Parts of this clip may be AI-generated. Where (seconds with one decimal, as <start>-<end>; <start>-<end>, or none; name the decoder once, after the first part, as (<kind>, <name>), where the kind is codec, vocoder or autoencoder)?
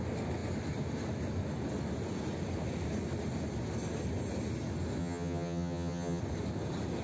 5.0-6.2 (vocoder, HiFi-GAN)